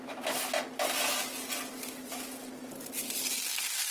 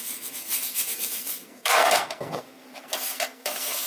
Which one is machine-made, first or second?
second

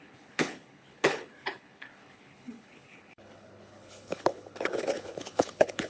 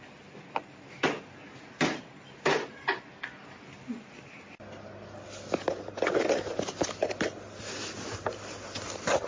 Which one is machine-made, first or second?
first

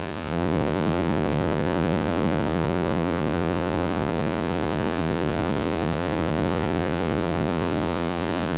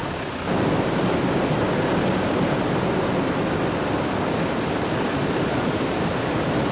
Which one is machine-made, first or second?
first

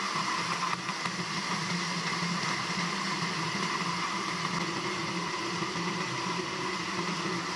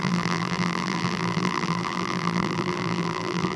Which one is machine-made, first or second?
second